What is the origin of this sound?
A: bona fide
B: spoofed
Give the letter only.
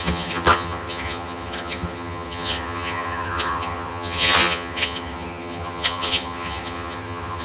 B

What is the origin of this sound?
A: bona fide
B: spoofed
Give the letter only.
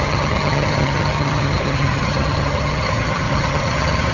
B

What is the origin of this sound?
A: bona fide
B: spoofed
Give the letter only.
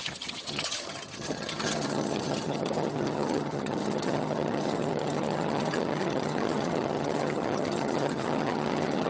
B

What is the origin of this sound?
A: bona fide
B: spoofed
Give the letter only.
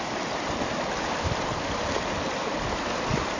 A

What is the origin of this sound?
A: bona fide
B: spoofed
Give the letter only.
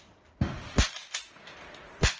A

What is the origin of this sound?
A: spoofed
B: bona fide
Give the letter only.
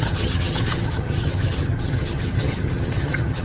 A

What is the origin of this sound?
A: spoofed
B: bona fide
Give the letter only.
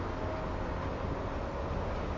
B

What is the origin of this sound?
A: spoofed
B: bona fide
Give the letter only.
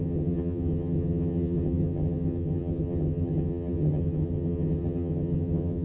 A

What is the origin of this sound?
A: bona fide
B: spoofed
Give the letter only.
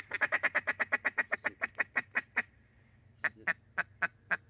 A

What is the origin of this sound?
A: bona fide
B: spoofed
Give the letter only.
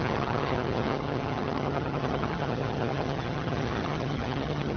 B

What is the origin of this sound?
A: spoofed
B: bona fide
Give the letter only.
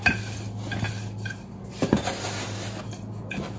B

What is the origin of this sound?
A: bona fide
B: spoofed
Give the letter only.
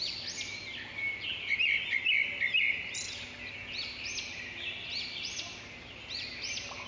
A